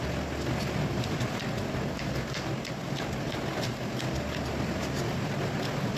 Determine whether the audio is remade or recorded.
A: recorded